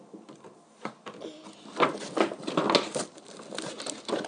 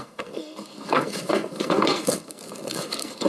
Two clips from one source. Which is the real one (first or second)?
first